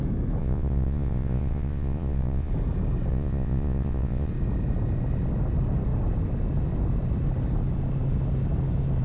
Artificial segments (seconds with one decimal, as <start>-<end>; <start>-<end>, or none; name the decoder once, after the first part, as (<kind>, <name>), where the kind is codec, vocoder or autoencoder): 0.4-2.5 (vocoder, Vocos); 3.1-4.3